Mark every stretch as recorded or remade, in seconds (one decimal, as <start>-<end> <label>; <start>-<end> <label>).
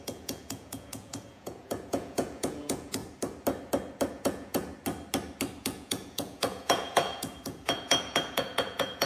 0.0-3.0 remade; 3.0-4.1 recorded; 4.1-4.7 remade; 4.7-5.6 recorded; 5.6-9.1 remade